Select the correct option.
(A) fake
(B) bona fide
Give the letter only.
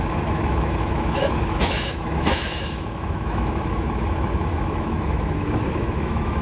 A